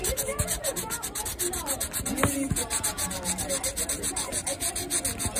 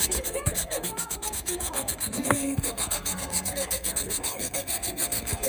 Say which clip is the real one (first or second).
first